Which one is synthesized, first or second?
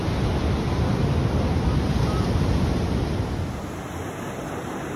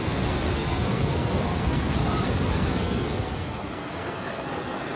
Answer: second